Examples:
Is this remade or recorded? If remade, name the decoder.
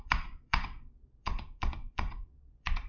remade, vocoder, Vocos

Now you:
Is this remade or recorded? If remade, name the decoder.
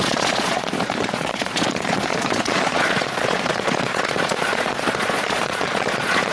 remade, vocoder, Vocos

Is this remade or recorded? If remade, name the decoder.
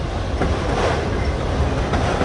recorded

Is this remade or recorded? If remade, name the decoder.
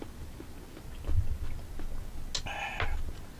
recorded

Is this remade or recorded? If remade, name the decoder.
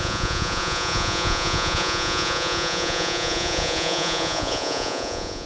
remade, vocoder, Vocos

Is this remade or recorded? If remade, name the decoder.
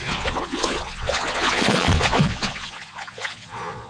remade, vocoder, Vocos